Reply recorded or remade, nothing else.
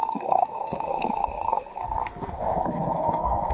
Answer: remade